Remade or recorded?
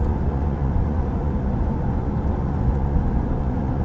remade